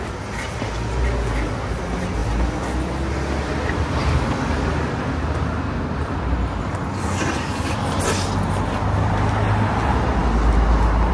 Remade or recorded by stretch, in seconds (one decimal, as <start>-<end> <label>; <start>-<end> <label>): 0.0-11.1 recorded